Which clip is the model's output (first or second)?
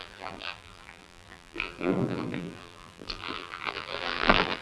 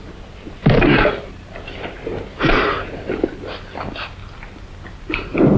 first